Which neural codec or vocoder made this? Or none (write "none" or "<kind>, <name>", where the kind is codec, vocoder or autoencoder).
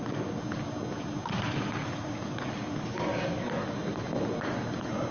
none